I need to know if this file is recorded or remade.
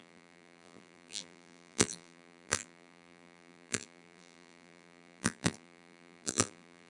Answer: remade